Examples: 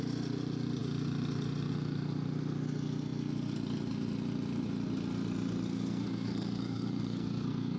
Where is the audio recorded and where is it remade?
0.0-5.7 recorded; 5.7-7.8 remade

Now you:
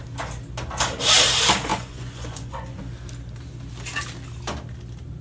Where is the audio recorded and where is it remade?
0.0-1.7 recorded; 1.7-2.8 remade; 2.8-5.2 recorded

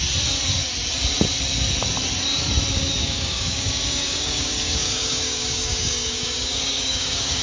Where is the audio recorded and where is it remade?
0.0-3.0 recorded; 3.0-7.4 remade

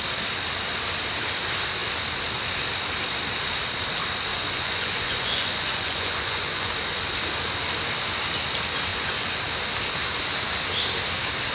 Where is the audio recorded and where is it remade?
0.0-4.3 recorded; 4.3-6.7 remade; 6.7-8.9 recorded; 8.9-9.4 remade; 9.4-11.5 recorded

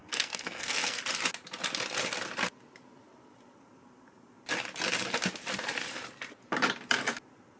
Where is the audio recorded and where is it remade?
0.0-1.0 remade; 1.0-7.6 recorded

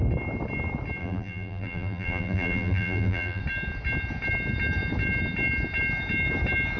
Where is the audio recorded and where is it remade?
0.0-1.0 recorded; 1.0-3.4 remade; 3.4-6.8 recorded

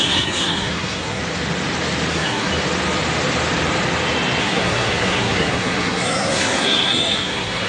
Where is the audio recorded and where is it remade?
0.0-1.2 remade; 1.2-2.1 recorded; 2.1-2.5 remade; 2.5-4.4 recorded; 4.4-7.7 remade

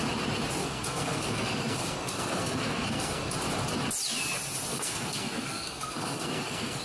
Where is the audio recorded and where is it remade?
0.0-0.6 recorded; 0.6-3.3 remade; 3.3-4.7 recorded; 4.7-6.8 remade